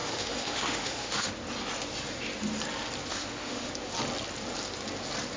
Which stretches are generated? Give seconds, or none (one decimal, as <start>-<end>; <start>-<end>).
0.0-1.3; 3.1-3.7